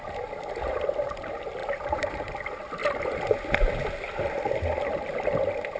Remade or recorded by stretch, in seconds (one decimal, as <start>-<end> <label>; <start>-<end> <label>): 0.0-1.6 recorded; 1.6-2.3 remade; 2.3-5.8 recorded